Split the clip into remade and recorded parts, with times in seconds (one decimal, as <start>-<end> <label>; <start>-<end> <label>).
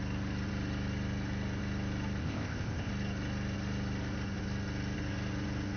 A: 0.0-2.2 recorded; 2.2-2.9 remade; 2.9-5.8 recorded